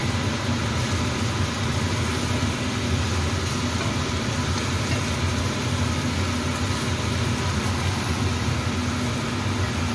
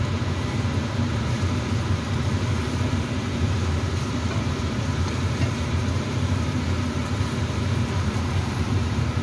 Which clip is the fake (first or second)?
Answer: second